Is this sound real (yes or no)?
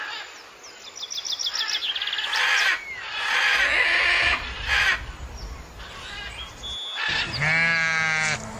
yes